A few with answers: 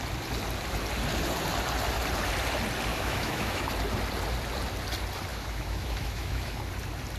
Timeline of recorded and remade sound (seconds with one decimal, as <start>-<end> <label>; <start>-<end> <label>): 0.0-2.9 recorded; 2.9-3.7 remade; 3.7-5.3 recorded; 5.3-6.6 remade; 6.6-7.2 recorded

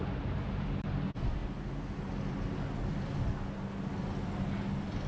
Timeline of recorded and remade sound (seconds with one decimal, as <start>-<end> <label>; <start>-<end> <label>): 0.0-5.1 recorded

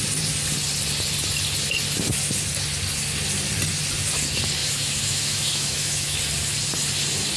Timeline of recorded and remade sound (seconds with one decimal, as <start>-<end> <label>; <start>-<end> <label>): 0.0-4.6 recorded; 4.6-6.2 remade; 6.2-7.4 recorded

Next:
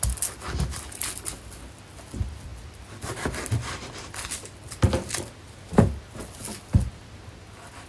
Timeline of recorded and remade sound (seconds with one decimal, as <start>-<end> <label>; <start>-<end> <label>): 0.0-7.9 recorded